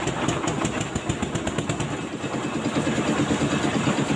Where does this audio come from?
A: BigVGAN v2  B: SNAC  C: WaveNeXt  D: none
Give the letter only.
D